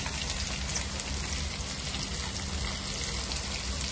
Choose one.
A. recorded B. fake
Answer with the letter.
A